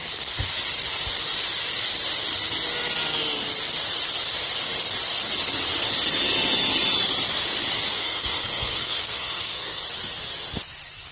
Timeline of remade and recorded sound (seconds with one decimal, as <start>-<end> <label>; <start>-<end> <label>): 0.0-7.9 recorded; 7.9-9.8 remade; 9.8-11.1 recorded